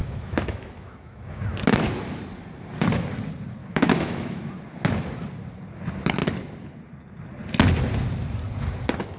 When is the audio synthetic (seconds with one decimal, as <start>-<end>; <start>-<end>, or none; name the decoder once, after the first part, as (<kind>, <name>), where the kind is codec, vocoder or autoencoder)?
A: 0.0-1.4 (autoencoder, DAC-VAE); 3.6-4.5